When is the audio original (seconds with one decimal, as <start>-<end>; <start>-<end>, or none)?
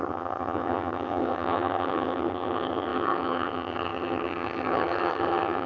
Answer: none